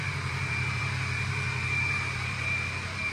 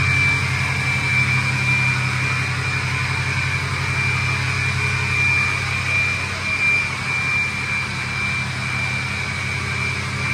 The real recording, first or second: second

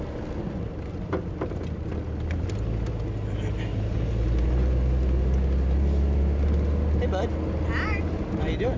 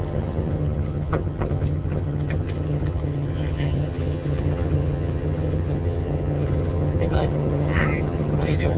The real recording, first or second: first